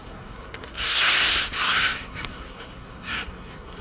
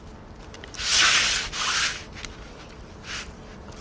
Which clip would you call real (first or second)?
second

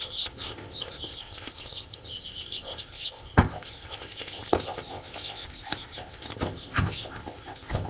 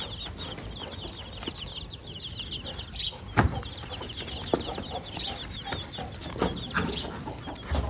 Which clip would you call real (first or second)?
second